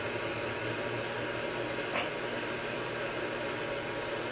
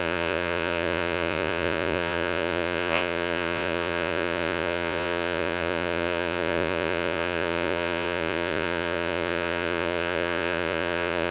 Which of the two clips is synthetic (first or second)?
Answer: second